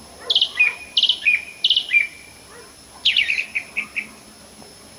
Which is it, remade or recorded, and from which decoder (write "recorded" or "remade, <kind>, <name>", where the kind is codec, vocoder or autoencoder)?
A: recorded